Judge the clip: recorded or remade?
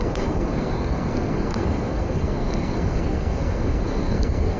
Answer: remade